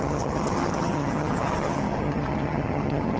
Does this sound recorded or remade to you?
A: remade